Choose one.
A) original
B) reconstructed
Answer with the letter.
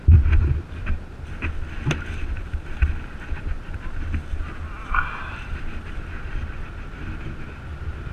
A